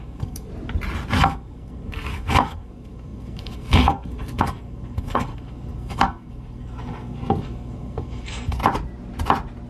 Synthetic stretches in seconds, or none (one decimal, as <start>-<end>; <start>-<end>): 0.0-0.5; 1.2-8.6